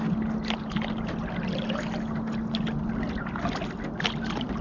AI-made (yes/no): no